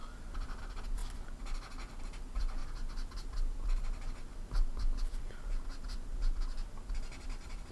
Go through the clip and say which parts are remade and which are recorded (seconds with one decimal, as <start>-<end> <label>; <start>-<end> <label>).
0.0-1.0 remade; 1.0-2.0 recorded; 2.0-2.6 remade; 2.6-4.2 recorded; 4.2-7.7 remade